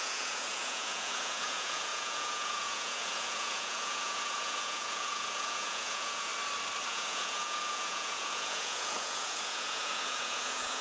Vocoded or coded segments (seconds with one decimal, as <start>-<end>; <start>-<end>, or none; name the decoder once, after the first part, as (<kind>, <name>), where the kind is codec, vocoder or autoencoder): 0.0-6.3 (vocoder, Vocos); 6.9-10.8